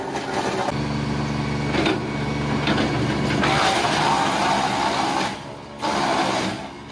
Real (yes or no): yes